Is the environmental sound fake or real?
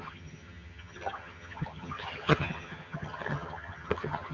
fake